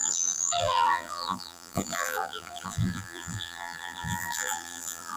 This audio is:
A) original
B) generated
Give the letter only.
B